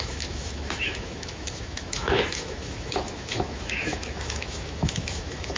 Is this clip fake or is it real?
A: fake